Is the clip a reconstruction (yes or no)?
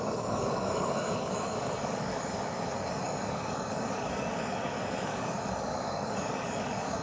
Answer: yes